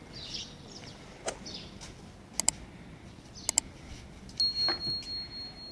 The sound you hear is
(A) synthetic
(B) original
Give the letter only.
B